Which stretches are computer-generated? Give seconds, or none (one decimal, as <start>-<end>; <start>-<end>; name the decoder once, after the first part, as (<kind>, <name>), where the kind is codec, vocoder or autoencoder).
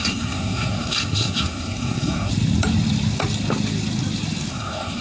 0.0-2.3 (codec, SNAC); 4.5-5.0